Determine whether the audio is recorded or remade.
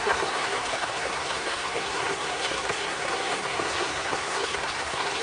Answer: remade